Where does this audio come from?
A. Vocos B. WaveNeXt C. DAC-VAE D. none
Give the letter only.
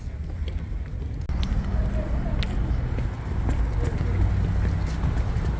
D